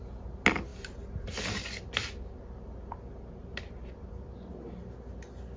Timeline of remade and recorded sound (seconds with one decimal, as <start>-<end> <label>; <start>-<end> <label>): 0.0-5.6 recorded

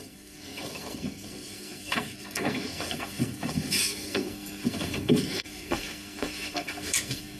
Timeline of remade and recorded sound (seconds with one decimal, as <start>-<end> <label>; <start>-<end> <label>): 0.0-7.4 remade

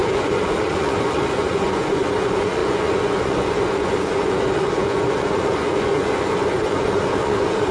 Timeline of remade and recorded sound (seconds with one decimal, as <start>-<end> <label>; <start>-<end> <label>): 0.0-7.7 remade

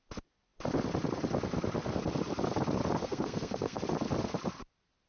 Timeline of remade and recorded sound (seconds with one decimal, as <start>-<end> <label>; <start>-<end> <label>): 0.0-3.0 recorded; 3.0-3.8 remade; 3.8-5.1 recorded

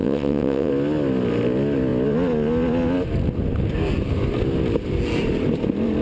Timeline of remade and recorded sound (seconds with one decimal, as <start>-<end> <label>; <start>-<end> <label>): 0.0-0.7 remade; 0.7-6.0 recorded